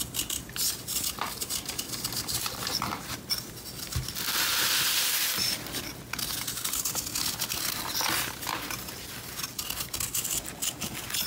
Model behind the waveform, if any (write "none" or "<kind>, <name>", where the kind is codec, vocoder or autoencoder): none